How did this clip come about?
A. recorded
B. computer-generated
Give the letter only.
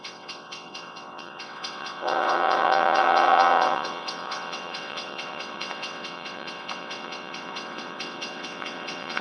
B